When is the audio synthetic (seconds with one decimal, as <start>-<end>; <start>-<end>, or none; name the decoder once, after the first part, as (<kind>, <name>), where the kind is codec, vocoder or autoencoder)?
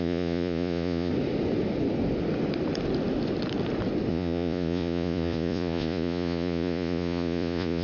0.0-1.1 (vocoder, Vocos); 4.1-7.8